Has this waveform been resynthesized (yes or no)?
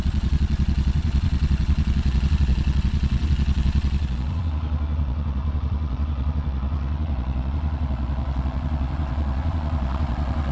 yes